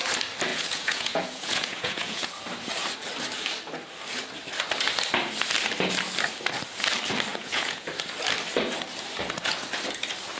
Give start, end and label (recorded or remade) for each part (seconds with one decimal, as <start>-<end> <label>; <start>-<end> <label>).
0.0-0.5 recorded; 0.5-2.3 remade; 2.3-7.3 recorded; 7.3-7.9 remade; 7.9-10.4 recorded